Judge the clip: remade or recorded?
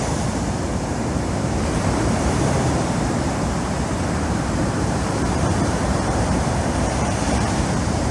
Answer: remade